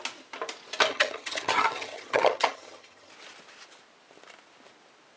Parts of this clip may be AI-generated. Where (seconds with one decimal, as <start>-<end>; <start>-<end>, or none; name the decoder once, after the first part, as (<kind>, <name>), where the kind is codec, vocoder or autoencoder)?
0.9-3.1 (vocoder, HiFi-GAN)